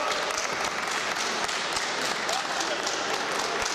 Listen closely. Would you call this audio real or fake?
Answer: real